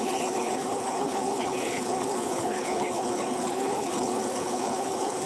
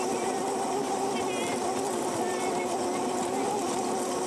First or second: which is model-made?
first